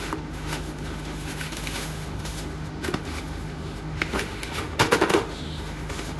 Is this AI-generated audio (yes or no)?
yes